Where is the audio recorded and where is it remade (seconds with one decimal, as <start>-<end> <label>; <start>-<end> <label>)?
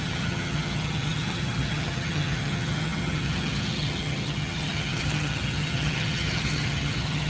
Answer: 0.0-7.3 remade